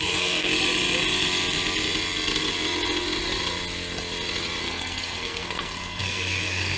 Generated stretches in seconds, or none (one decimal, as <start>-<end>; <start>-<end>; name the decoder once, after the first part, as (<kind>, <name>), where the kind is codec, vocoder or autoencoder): 0.0-0.5 (codec, SNAC); 4.6-6.8